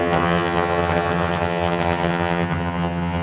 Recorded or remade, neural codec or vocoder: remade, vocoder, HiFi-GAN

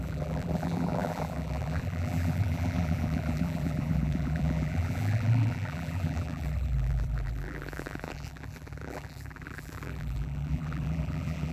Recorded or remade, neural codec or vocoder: remade, vocoder, BigVGAN v2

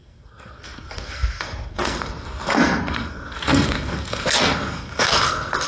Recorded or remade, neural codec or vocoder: remade, codec, SNAC